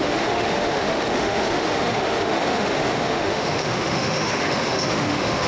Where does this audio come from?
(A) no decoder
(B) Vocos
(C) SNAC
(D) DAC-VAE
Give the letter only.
D